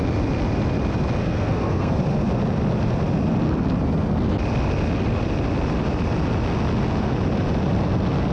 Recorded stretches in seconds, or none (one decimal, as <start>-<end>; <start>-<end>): 0.0-1.2; 2.0-8.3